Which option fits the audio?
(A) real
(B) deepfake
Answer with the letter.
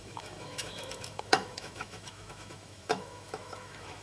B